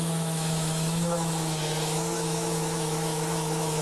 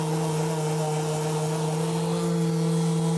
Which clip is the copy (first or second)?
first